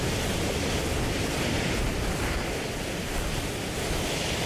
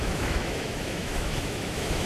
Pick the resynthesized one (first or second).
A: second